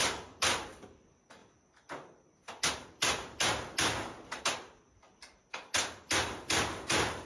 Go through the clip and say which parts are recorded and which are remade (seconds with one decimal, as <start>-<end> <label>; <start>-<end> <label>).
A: 0.0-7.3 recorded